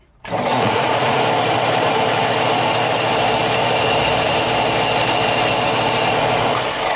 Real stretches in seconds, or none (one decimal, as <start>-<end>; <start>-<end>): 0.0-0.5; 1.2-7.0